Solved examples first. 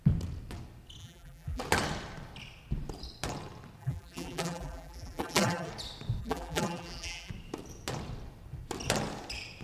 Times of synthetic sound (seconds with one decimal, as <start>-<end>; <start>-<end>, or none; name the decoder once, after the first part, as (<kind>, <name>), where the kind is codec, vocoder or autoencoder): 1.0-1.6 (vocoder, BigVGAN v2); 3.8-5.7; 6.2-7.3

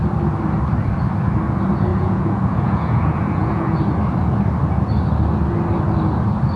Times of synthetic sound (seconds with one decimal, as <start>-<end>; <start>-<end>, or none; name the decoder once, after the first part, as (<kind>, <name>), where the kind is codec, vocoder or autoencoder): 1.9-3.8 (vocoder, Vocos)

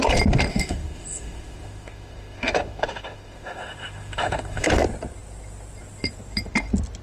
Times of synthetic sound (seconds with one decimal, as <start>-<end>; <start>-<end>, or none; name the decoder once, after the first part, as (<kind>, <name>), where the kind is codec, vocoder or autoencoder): 0.5-4.7 (autoencoder, DAC-VAE)